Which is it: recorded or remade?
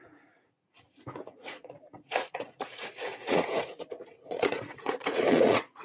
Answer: remade